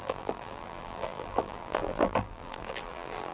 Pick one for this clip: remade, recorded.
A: remade